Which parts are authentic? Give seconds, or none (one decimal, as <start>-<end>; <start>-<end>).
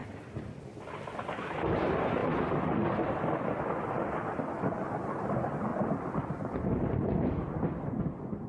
0.8-2.2; 4.3-5.7; 8.0-8.5